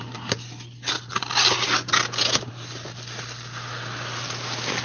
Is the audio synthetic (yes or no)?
no